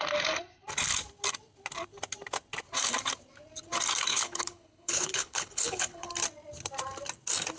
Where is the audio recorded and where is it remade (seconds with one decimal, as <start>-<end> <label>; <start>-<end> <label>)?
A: 0.0-4.1 recorded; 4.1-6.1 remade; 6.1-7.6 recorded